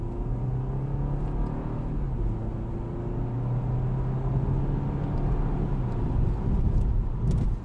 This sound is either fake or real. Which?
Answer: real